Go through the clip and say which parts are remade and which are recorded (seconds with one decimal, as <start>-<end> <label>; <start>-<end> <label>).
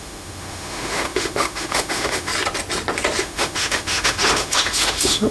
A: 0.0-2.3 remade; 2.3-3.2 recorded; 3.2-5.3 remade